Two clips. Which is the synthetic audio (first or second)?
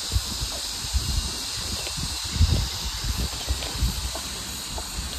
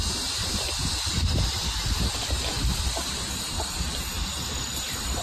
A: second